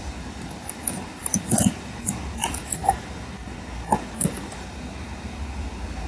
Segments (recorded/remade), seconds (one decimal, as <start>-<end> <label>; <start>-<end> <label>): 0.0-6.1 recorded